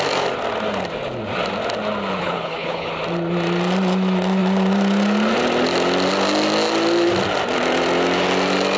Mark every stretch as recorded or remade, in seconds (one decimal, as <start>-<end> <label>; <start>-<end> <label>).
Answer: 0.0-2.2 recorded; 2.2-2.9 remade; 2.9-8.8 recorded